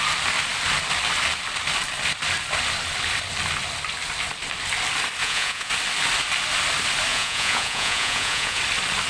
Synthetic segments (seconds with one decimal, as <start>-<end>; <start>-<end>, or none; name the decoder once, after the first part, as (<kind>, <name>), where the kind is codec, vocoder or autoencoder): 5.2-5.7 (vocoder, Vocos); 7.1-8.6